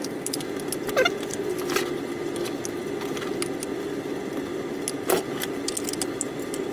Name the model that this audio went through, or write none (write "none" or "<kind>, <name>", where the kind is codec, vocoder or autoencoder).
none